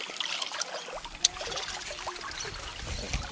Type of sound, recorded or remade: recorded